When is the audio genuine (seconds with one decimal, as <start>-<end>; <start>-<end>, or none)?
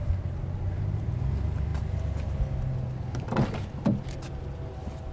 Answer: 0.0-5.1